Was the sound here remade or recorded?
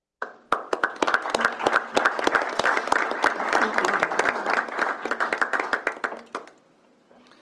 recorded